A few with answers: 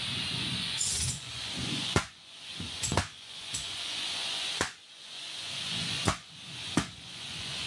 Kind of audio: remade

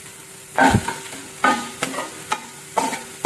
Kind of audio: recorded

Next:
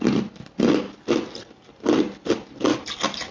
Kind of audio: recorded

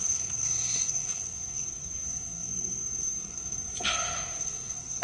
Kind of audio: remade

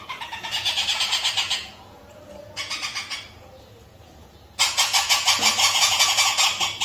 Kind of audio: remade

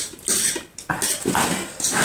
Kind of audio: recorded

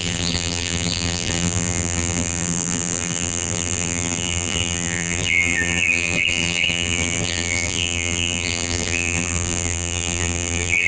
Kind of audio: remade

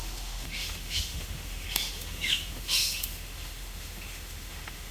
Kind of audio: remade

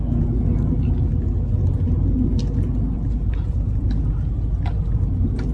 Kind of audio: recorded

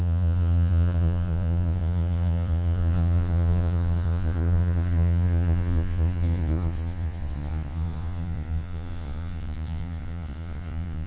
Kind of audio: remade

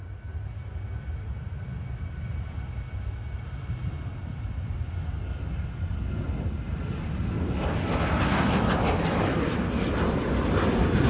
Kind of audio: recorded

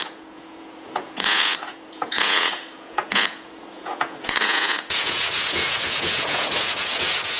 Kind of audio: remade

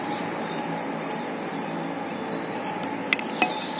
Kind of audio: recorded